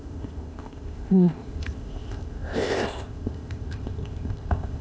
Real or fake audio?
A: fake